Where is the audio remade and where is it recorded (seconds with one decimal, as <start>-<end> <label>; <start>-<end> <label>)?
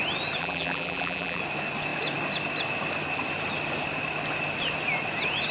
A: 0.0-0.4 recorded; 0.4-1.4 remade; 1.4-5.5 recorded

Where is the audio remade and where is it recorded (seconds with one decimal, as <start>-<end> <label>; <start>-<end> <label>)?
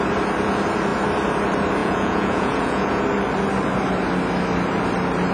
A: 0.0-1.8 recorded; 1.8-2.9 remade; 2.9-5.3 recorded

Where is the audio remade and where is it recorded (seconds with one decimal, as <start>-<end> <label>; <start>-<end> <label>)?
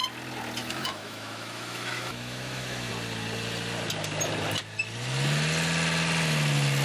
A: 0.0-0.6 recorded; 0.6-2.9 remade; 2.9-6.8 recorded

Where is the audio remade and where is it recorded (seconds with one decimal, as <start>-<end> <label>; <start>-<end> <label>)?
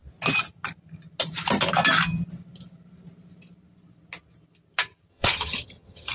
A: 0.0-5.1 recorded; 5.1-6.1 remade